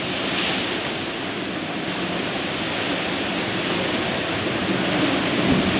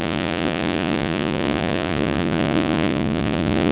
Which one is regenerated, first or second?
second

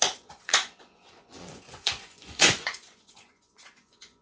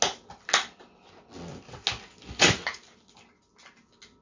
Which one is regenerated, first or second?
first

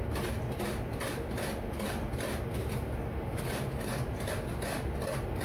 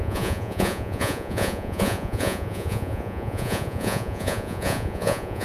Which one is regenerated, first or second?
second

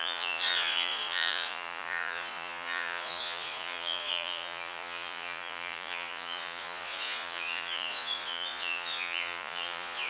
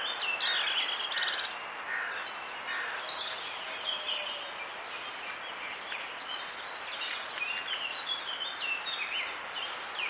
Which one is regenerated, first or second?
first